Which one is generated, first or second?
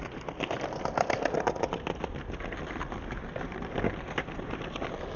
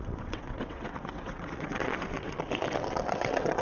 second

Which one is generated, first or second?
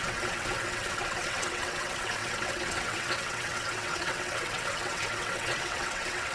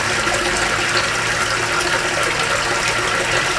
first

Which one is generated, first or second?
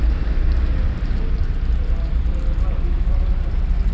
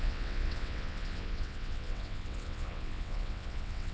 second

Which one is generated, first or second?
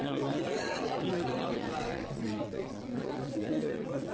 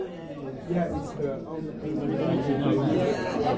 first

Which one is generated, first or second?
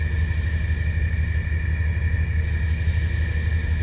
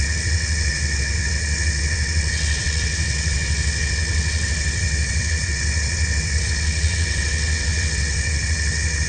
second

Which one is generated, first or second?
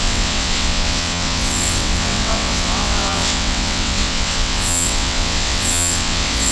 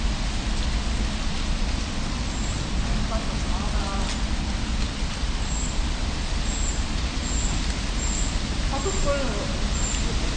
first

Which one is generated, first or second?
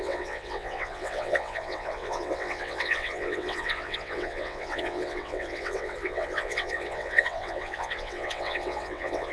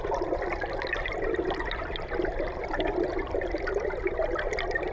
first